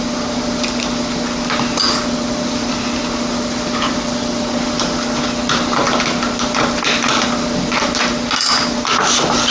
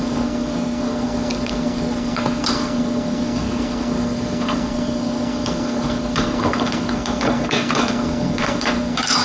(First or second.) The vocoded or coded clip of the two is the second